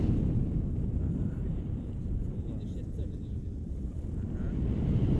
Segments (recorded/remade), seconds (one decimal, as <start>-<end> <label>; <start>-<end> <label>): 0.0-1.4 recorded; 1.4-4.5 remade; 4.5-5.2 recorded